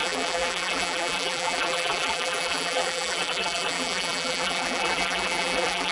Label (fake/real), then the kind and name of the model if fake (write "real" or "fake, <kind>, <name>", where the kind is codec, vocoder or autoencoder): fake, vocoder, BigVGAN v2